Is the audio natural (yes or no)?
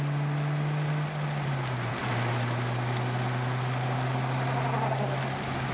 yes